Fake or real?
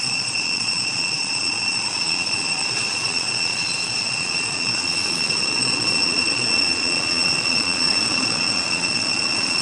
fake